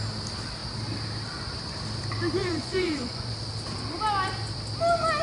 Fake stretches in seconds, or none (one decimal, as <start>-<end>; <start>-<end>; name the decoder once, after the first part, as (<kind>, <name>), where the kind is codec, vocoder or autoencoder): 2.4-3.3 (vocoder, Vocos)